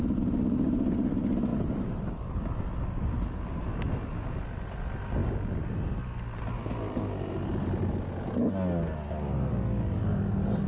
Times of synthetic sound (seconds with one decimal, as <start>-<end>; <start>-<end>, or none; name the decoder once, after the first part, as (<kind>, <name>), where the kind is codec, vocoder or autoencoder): none